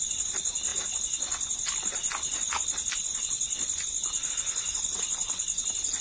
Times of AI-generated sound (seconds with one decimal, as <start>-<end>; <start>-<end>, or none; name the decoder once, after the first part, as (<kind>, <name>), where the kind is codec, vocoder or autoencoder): none